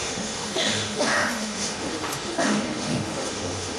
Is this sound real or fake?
fake